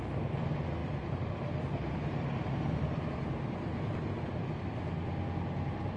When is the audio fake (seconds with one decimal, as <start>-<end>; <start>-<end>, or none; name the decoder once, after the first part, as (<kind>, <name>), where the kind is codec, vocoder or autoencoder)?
none